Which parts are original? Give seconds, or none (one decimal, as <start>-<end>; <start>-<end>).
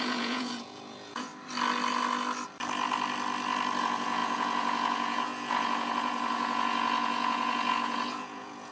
1.3-3.8